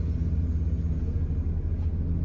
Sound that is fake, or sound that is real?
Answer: real